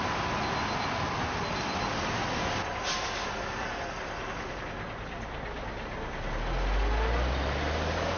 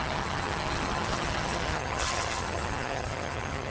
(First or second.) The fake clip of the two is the second